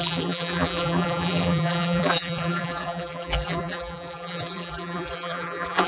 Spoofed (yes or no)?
yes